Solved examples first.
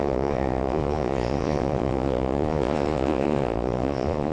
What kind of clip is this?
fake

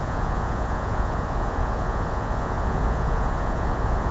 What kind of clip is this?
fake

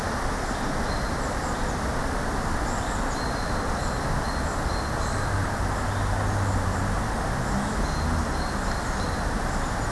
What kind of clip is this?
real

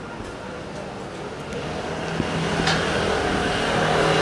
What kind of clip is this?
real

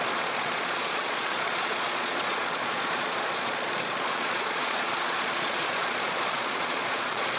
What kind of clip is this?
fake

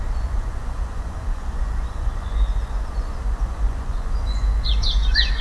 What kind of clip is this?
fake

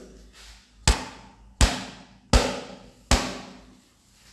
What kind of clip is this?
real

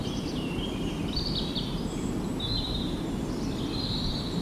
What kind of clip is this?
real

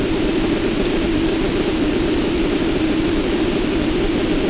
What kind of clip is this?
real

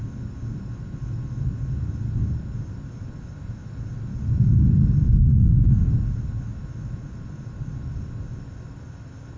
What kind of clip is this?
real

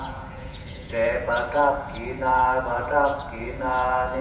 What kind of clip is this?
fake